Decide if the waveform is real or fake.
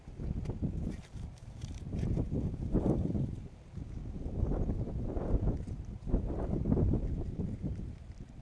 fake